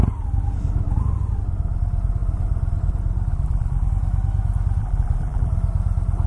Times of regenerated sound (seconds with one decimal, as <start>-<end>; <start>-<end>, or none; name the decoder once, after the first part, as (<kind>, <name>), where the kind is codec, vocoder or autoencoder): 3.3-3.9 (vocoder, BigVGAN v2); 4.8-5.5